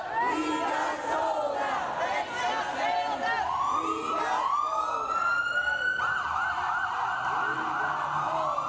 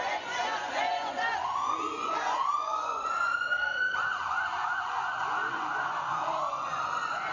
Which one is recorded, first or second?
first